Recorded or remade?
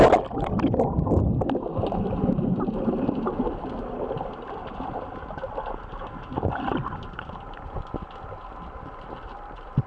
recorded